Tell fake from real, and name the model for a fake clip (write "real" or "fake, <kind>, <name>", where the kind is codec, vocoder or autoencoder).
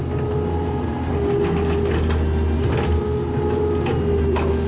real